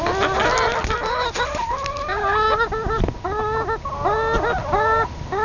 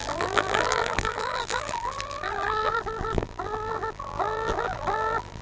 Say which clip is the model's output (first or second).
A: second